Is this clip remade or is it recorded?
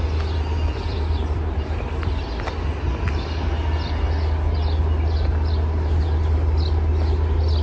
recorded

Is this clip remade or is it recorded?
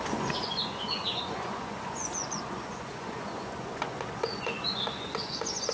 remade